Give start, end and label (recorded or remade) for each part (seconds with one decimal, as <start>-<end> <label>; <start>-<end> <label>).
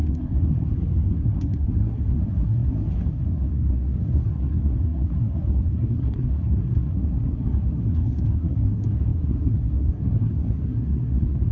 0.0-11.5 remade